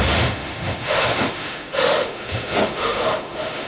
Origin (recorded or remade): remade